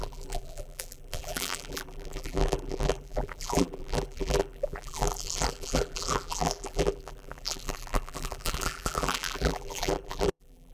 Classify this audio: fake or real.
fake